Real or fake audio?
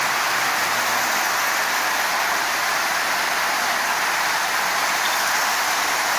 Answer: real